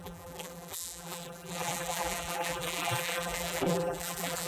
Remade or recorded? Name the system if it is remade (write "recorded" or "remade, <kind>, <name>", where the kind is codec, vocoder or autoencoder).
remade, vocoder, BigVGAN v2